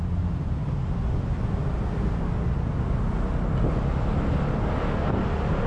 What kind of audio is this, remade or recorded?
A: recorded